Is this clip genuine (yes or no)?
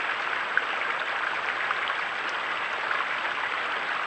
yes